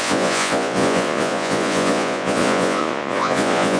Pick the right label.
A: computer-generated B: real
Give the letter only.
A